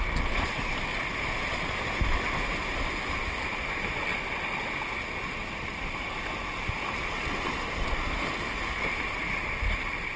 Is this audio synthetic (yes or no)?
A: no